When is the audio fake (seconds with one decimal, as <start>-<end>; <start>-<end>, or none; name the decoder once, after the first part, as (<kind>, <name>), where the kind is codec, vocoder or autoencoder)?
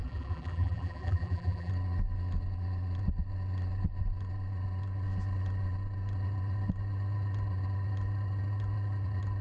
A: 0.0-1.7 (vocoder, BigVGAN v2)